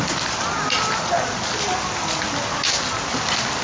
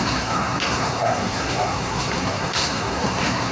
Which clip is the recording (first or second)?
first